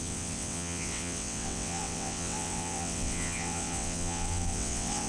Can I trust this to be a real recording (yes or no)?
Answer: no